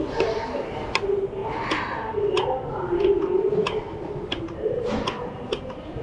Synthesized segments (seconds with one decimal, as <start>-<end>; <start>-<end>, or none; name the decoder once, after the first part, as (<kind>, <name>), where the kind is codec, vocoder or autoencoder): none